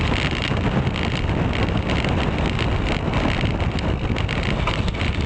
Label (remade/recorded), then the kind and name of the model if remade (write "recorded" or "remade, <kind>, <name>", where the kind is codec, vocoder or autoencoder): recorded